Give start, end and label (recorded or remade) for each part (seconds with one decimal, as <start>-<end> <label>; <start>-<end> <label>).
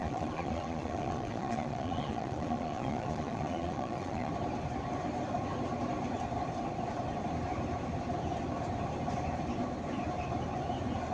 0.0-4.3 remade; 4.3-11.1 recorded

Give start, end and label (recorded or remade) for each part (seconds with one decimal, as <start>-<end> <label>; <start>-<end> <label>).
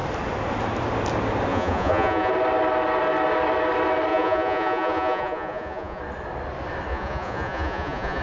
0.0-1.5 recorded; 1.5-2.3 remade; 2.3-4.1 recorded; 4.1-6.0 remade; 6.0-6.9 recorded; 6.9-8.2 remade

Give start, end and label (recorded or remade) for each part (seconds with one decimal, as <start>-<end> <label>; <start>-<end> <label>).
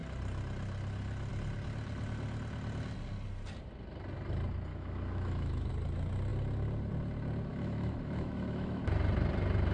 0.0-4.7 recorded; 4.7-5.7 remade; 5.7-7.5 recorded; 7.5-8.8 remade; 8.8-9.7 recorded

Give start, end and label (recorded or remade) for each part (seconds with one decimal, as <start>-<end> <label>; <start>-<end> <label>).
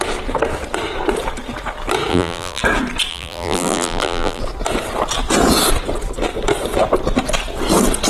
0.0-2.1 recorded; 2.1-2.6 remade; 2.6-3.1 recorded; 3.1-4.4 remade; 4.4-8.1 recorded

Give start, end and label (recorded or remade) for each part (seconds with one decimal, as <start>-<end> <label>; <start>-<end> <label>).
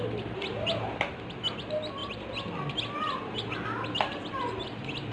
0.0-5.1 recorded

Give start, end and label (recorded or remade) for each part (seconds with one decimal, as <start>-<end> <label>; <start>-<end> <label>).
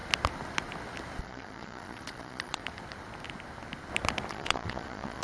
0.0-1.2 recorded; 1.2-2.6 remade; 2.6-4.3 recorded; 4.3-5.2 remade